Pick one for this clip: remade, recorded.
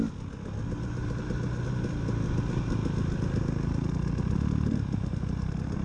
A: recorded